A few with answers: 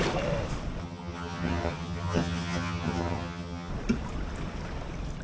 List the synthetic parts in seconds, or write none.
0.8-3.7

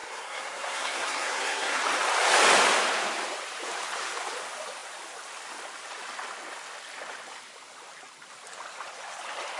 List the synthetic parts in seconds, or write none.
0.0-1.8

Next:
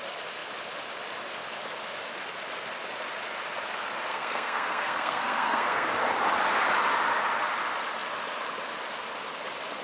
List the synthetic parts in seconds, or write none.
4.1-5.9

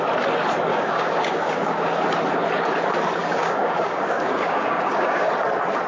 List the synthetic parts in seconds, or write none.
0.7-2.0; 3.2-5.3

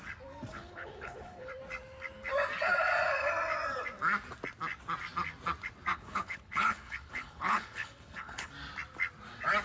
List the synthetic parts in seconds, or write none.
0.5-1.5; 5.9-8.5

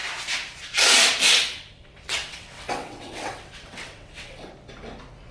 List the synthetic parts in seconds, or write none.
1.3-4.5